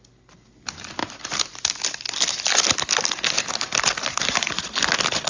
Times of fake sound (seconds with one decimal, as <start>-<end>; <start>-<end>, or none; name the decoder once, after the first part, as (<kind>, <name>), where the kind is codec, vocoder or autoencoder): none